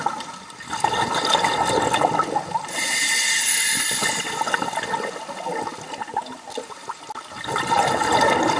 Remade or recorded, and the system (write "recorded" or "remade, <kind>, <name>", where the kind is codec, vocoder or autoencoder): recorded